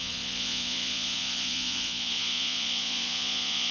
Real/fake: fake